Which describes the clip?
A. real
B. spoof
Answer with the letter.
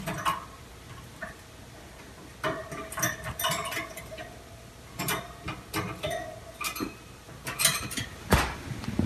A